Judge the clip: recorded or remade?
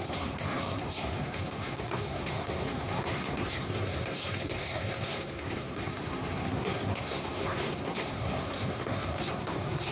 remade